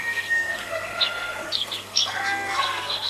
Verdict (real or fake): fake